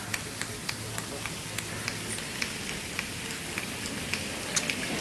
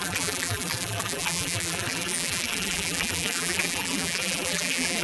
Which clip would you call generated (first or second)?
second